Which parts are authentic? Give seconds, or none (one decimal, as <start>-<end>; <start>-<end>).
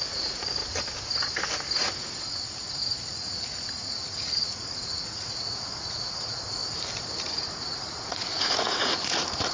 0.6-3.1; 6.6-7.2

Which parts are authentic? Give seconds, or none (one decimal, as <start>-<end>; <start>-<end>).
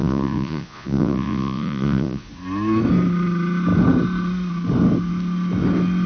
2.3-6.1